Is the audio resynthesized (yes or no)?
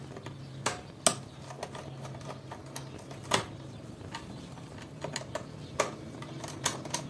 no